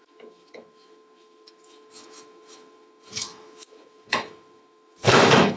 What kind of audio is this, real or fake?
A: fake